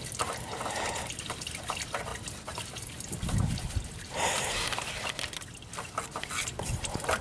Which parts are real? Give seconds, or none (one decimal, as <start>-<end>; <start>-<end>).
0.0-7.2